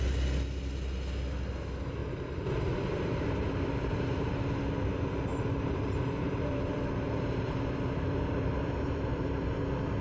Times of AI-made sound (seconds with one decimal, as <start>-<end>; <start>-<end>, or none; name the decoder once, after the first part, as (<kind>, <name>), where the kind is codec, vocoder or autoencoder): 2.0-4.3 (vocoder, BigVGAN v2); 5.3-9.6